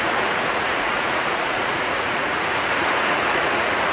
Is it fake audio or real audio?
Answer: fake